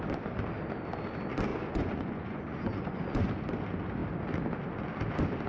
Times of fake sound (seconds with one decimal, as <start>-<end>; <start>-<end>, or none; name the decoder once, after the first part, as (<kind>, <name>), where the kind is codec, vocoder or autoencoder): 1.5-3.3 (vocoder, Vocos)